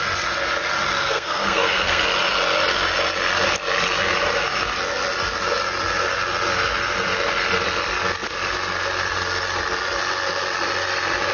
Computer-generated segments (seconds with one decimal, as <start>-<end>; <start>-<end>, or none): 1.0-2.0